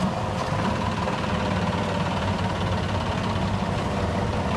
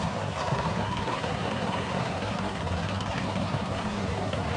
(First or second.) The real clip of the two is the first